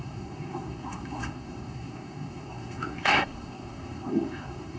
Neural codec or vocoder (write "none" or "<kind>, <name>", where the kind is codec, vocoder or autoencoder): codec, SNAC